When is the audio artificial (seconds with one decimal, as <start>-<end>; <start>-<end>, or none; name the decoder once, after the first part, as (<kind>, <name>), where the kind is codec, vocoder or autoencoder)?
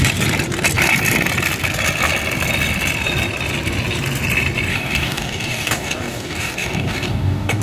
4.7-7.6 (codec, DAC)